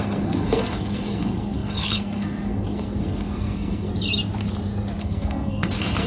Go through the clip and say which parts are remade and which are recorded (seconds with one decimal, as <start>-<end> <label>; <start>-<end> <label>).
0.0-3.9 remade; 3.9-5.0 recorded; 5.0-6.1 remade